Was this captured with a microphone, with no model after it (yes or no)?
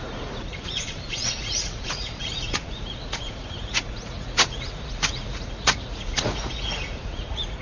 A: no